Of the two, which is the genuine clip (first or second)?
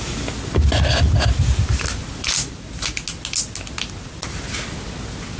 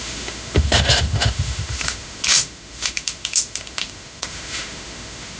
first